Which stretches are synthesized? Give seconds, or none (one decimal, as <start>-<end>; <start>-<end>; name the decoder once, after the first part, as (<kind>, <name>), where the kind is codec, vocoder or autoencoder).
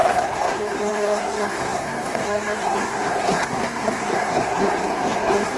0.0-5.6 (codec, SNAC)